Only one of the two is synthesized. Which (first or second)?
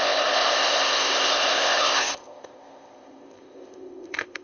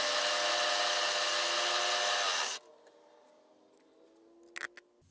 first